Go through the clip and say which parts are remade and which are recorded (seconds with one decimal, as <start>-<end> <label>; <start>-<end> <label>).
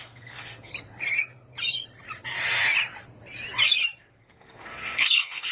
0.0-0.7 remade; 0.7-4.0 recorded; 4.0-5.5 remade